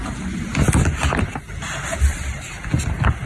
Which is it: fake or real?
real